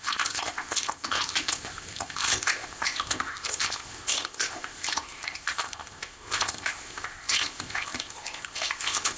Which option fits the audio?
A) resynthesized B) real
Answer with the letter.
A